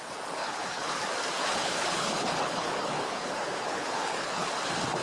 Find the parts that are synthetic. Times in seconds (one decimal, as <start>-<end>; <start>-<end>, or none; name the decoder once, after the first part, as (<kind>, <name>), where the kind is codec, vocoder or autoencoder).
0.4-1.0 (codec, HILCodec); 1.5-4.5